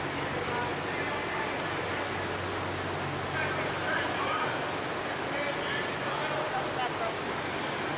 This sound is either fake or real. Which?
real